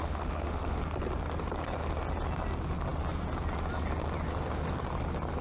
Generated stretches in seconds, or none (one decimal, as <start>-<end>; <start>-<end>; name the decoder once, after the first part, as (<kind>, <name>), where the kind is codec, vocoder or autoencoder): 0.0-0.8 (autoencoder, DAC-VAE)